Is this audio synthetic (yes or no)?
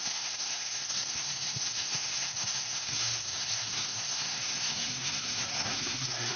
yes